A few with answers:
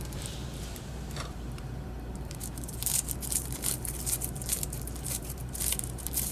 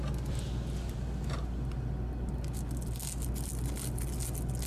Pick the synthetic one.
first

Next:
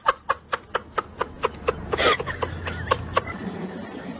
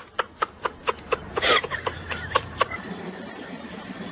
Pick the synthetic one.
second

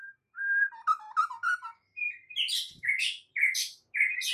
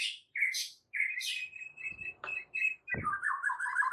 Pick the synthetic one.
second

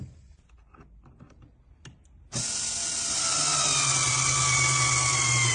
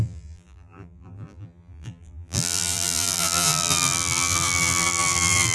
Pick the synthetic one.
second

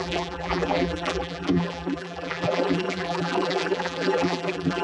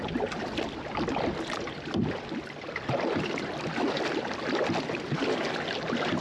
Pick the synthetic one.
first